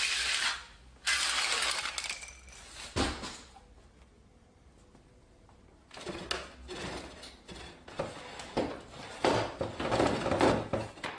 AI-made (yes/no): no